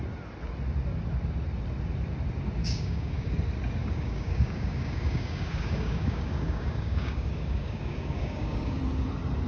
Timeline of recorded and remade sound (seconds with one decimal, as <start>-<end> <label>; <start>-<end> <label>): 0.0-2.6 recorded; 2.6-3.3 remade; 3.3-3.8 recorded; 3.8-8.8 remade; 8.8-9.5 recorded